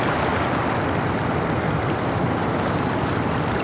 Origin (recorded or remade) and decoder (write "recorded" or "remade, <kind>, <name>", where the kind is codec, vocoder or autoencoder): recorded